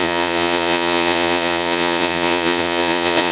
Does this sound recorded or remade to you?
remade